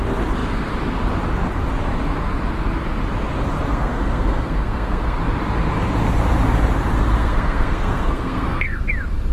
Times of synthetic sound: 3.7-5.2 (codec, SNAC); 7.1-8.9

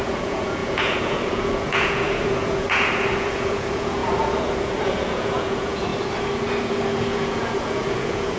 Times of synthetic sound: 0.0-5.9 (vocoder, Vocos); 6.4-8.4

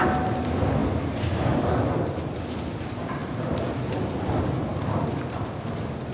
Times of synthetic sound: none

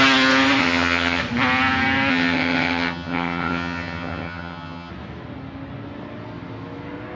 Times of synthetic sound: 0.6-1.2 (vocoder, HiFi-GAN); 2.1-4.9

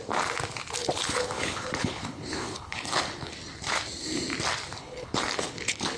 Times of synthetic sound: 0.8-3.3 (codec, HILCodec); 4.8-6.0

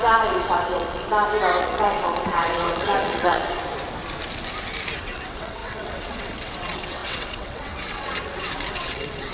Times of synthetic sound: 0.0-1.1 (vocoder, WaveNeXt); 1.6-3.6; 5.0-9.3

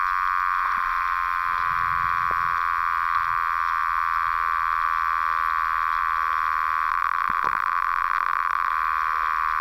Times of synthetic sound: 6.9-8.7 (vocoder, BigVGAN v2)

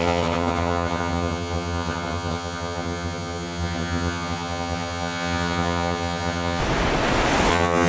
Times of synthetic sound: 0.0-6.6 (vocoder, HiFi-GAN); 7.5-7.9